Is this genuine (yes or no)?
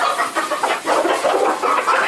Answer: yes